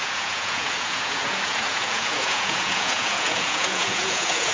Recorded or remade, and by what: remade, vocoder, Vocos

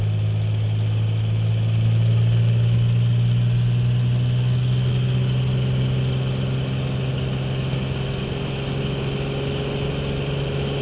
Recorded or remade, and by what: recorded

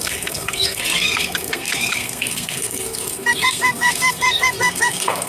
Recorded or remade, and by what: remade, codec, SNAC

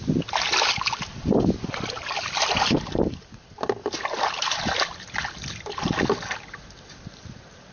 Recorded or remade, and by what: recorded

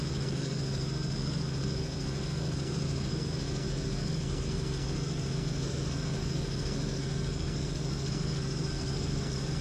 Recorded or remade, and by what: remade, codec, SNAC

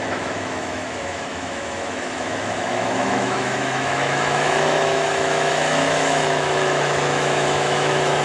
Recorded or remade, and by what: remade, autoencoder, DAC-VAE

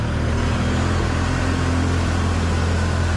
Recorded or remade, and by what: recorded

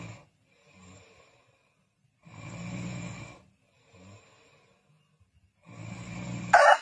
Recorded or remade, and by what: recorded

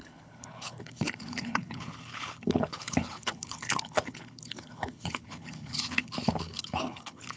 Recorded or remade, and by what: remade, codec, HILCodec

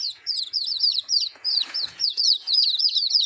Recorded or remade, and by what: remade, vocoder, Vocos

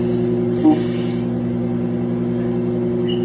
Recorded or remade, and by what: recorded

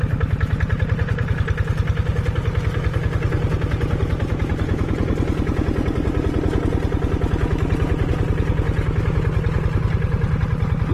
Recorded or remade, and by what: recorded